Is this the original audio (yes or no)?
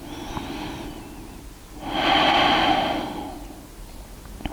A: yes